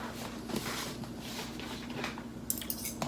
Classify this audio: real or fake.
real